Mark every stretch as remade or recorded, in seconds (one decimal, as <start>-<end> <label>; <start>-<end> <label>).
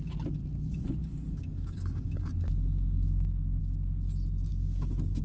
0.0-1.0 recorded; 1.0-3.6 remade; 3.6-4.5 recorded; 4.5-5.2 remade